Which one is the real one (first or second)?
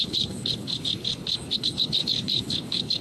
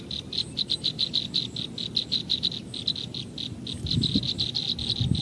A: second